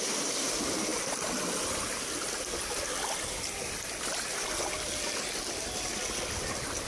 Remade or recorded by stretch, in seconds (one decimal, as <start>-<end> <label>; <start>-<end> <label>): 0.0-6.9 recorded